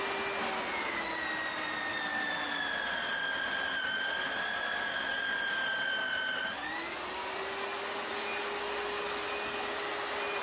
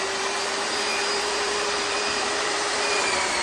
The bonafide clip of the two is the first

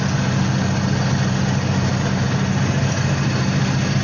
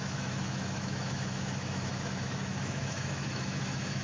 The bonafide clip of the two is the first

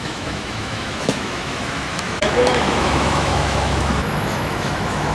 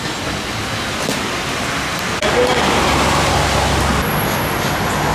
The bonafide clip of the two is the second